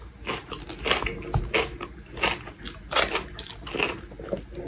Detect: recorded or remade recorded